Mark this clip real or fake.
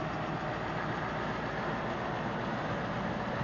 real